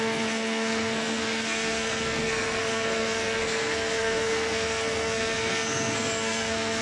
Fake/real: fake